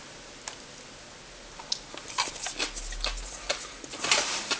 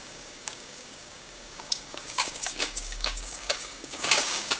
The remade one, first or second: second